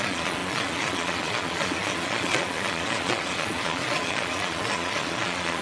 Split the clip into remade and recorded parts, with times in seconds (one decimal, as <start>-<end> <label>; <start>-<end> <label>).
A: 0.0-5.6 remade